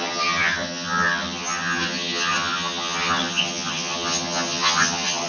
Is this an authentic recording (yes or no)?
no